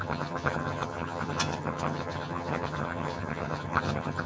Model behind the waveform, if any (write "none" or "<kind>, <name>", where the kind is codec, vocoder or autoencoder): vocoder, HiFi-GAN